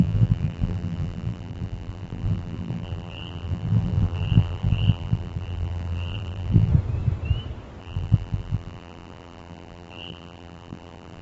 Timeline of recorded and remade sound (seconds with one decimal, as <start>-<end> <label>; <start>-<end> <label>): 0.0-6.7 remade; 6.7-7.8 recorded; 7.8-11.2 remade